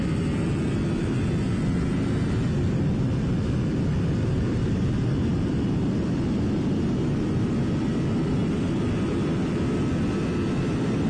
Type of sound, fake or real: real